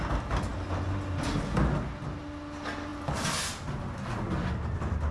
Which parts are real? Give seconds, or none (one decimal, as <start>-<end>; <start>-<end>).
0.0-5.1